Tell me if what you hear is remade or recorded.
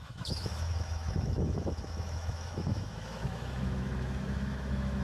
remade